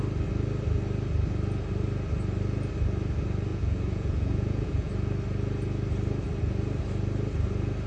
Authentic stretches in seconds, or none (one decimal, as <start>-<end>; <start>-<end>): 0.0-3.5; 4.9-7.9